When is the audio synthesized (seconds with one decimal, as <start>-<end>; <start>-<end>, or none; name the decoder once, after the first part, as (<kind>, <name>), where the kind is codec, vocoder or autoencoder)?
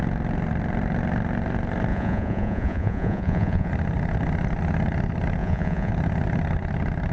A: 1.9-3.7 (vocoder, Vocos); 5.4-5.9